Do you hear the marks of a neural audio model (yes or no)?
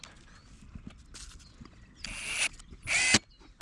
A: no